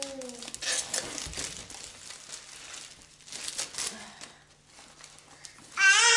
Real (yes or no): yes